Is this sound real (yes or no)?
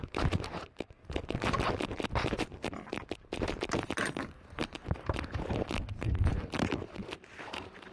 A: no